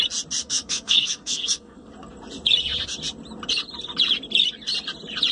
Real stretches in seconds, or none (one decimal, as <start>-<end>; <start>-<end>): 0.0-0.4; 1.9-5.3